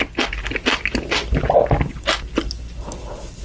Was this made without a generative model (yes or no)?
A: yes